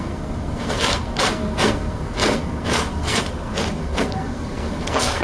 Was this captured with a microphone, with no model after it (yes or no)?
no